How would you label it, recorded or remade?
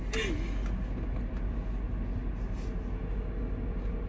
recorded